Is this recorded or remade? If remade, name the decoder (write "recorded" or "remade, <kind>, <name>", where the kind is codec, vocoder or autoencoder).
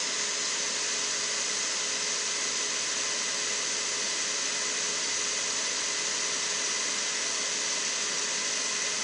recorded